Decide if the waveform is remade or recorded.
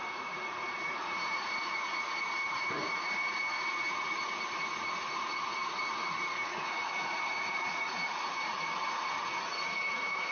remade